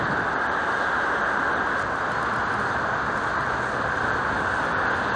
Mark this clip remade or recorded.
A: recorded